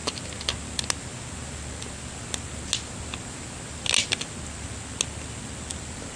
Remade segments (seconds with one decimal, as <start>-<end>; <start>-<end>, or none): none